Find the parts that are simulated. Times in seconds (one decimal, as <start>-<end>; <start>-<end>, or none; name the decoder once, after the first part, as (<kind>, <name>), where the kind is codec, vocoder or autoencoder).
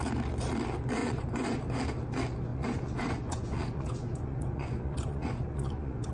1.0-1.6 (vocoder, Vocos); 2.5-6.1